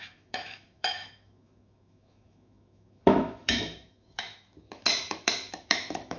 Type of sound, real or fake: fake